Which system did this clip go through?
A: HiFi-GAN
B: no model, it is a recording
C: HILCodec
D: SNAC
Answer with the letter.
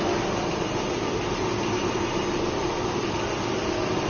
B